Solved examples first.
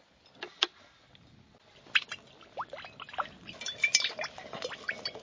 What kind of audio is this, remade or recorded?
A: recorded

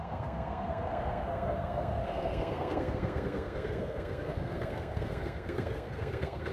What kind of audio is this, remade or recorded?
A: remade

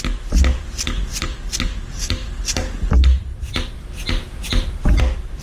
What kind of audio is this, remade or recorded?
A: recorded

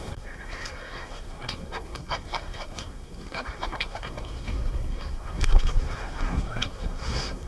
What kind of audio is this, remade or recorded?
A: remade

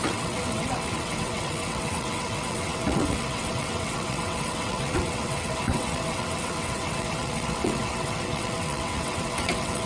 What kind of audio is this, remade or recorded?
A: remade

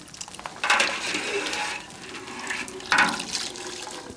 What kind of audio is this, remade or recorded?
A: recorded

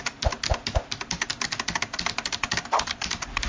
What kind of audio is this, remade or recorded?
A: recorded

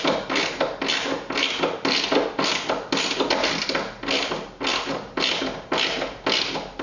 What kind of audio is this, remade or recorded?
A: recorded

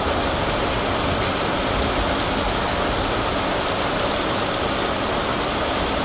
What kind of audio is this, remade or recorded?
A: recorded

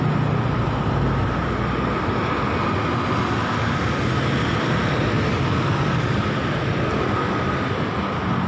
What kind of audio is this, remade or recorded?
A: recorded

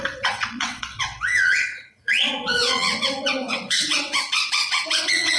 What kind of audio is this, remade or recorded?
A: remade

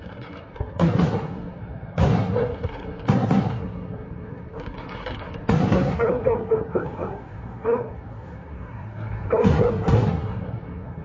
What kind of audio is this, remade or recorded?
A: remade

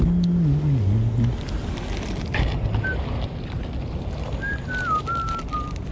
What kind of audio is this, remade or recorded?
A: recorded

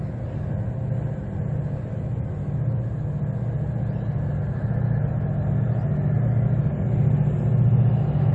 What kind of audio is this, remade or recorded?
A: recorded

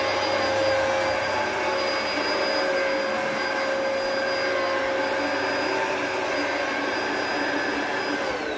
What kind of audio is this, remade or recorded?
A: recorded